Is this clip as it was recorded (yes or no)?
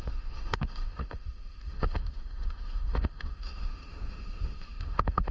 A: no